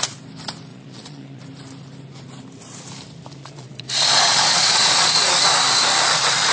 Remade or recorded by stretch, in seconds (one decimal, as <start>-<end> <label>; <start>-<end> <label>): 0.0-0.7 recorded; 0.7-1.4 remade; 1.4-3.4 recorded; 3.4-5.3 remade; 5.3-6.5 recorded